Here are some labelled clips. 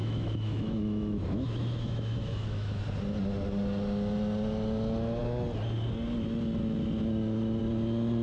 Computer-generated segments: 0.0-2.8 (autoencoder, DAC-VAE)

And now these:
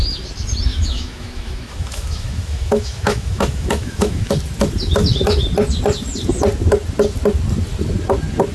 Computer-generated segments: 0.7-4.3 (autoencoder, DAC-VAE)

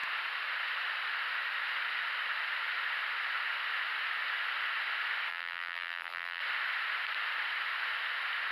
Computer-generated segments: 5.3-6.4 (vocoder, BigVGAN v2)

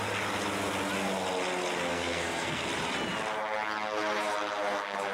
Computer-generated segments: 1.9-2.6 (codec, SNAC)

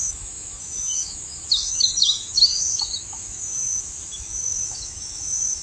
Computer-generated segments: 0.0-5.6 (autoencoder, DAC-VAE)

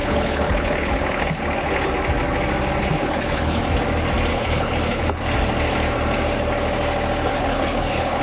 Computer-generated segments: 0.0-1.9 (codec, HILCodec); 2.8-3.6; 4.3-5.2; 7.3-8.2

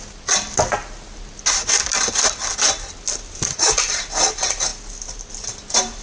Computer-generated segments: none